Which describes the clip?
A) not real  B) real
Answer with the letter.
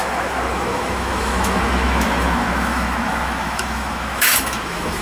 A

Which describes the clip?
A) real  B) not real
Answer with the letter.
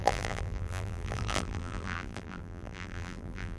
B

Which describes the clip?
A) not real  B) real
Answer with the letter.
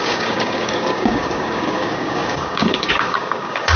A